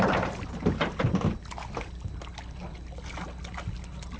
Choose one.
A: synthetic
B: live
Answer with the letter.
B